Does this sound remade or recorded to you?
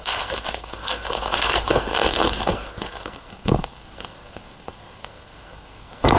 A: remade